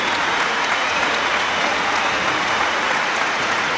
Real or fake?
fake